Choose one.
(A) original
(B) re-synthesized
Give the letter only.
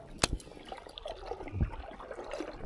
A